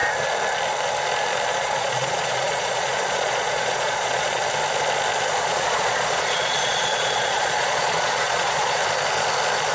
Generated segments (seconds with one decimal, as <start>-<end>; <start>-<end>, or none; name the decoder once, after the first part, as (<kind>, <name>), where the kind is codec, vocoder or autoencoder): 1.5-4.4 (vocoder, Vocos); 5.4-8.8